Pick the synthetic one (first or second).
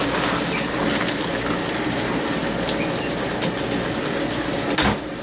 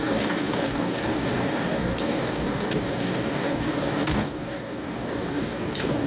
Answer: second